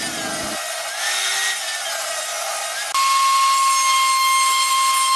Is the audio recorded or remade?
recorded